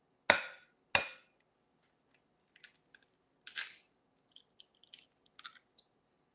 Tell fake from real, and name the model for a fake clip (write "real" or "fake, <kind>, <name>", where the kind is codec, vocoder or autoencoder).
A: real